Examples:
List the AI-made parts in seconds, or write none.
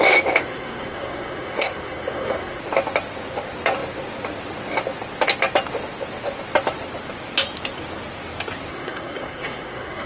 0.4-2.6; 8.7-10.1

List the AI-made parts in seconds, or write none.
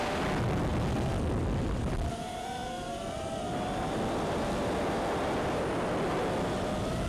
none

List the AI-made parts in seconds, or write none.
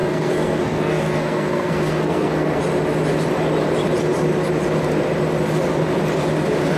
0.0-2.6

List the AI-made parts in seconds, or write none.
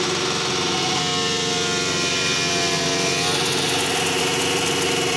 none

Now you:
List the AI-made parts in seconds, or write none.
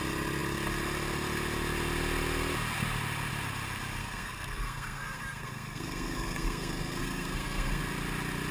4.0-7.8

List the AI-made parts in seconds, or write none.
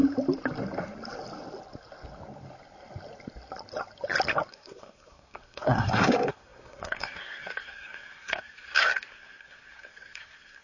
4.5-10.6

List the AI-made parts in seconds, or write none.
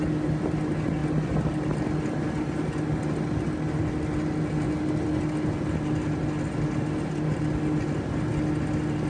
none